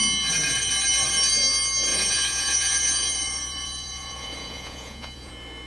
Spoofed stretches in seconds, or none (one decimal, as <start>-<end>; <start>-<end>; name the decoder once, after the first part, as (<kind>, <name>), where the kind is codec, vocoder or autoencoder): 1.9-5.3 (vocoder, Vocos)